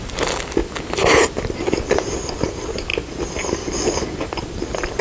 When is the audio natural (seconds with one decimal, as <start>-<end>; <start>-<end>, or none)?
0.0-5.0